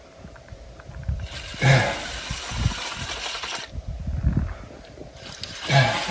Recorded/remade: recorded